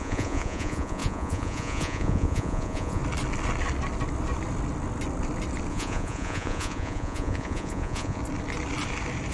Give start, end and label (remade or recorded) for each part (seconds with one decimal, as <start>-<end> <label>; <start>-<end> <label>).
0.0-3.0 remade; 3.0-5.7 recorded; 5.7-8.2 remade; 8.2-9.3 recorded